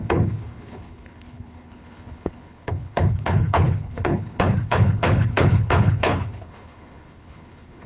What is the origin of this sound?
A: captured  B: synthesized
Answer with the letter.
B